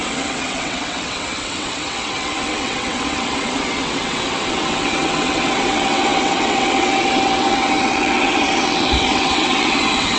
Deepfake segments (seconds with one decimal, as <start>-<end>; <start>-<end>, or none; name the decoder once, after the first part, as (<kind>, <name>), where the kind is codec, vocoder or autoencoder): 0.0-10.2 (vocoder, WaveNeXt)

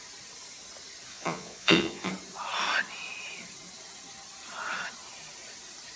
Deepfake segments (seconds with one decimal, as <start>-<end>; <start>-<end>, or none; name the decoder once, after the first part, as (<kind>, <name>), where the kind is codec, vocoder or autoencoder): 1.1-2.1 (vocoder, Vocos)

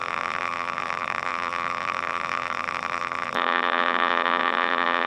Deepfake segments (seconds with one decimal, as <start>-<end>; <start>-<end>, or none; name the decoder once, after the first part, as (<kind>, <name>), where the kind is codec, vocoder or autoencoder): 0.0-5.1 (vocoder, BigVGAN v2)

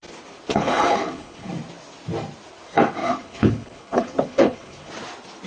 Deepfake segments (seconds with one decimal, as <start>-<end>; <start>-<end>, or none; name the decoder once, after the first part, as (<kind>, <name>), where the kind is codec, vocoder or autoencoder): 0.5-1.5 (codec, HILCodec); 3.0-4.9

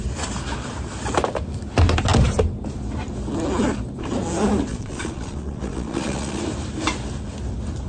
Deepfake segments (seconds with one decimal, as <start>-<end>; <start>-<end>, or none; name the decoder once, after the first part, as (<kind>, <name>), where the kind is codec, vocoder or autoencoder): 4.7-6.4 (vocoder, Vocos)

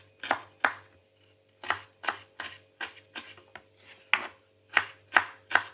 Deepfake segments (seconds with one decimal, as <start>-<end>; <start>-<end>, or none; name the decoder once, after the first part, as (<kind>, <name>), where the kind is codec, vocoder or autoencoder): none

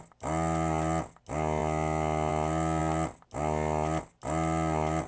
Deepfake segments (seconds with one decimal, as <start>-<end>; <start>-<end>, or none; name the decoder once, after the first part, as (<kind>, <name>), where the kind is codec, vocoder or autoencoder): none